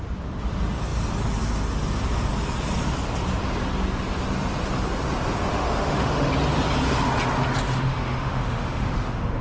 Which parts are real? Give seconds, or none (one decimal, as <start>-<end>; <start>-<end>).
0.0-5.5; 6.3-7.7